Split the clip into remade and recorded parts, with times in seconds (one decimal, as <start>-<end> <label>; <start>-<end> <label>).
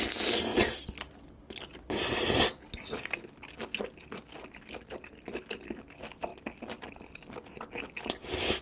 0.0-8.6 recorded